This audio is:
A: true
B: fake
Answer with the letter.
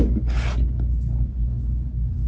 A